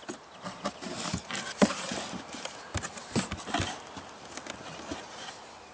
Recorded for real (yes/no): yes